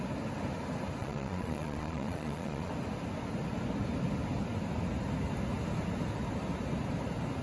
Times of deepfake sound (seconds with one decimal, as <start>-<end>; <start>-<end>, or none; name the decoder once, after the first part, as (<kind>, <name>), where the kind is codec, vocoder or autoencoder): 1.0-2.7 (vocoder, Vocos)